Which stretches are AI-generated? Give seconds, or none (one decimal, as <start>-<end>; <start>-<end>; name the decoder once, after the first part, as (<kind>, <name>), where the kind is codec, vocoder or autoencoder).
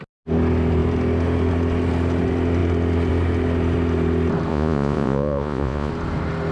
4.5-5.9 (vocoder, Vocos)